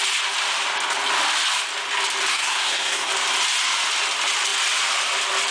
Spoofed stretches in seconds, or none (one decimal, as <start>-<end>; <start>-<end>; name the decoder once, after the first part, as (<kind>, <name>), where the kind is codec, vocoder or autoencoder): 2.3-3.1 (codec, SNAC)